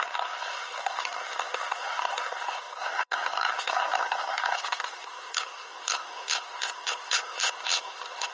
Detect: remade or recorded remade